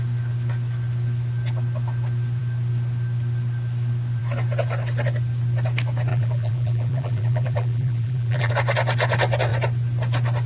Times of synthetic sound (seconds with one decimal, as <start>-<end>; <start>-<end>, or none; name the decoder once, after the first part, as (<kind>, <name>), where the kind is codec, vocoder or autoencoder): 6.1-8.5 (vocoder, BigVGAN v2)